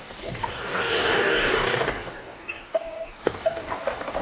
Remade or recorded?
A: remade